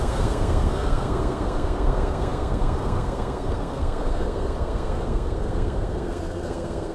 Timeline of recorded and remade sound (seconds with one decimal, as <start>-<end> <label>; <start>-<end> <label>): 0.0-6.9 remade